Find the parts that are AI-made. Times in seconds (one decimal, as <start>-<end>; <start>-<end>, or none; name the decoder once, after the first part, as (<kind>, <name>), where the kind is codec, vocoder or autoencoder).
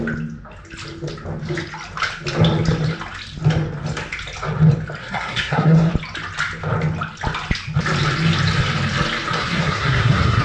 5.0-5.9 (codec, SNAC); 9.4-10.4